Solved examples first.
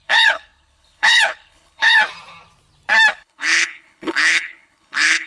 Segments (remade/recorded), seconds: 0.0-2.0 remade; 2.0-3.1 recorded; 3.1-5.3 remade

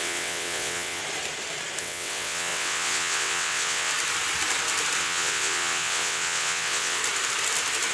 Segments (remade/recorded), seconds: 0.0-1.0 remade; 1.0-1.8 recorded; 1.8-3.9 remade; 3.9-5.0 recorded; 5.0-7.0 remade; 7.0-7.9 recorded

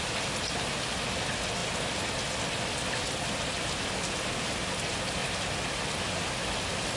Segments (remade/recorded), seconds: 0.0-7.0 recorded

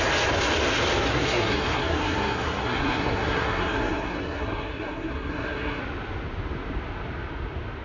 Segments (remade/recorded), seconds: 0.0-1.1 recorded; 1.1-5.8 remade; 5.8-7.8 recorded

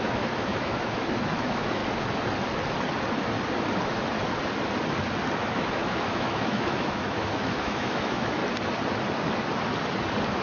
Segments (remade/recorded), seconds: 0.0-1.8 remade; 1.8-5.4 recorded; 5.4-8.4 remade; 8.4-10.4 recorded

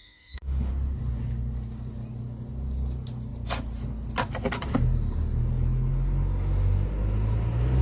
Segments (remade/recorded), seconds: 0.0-0.7 remade; 0.7-7.8 recorded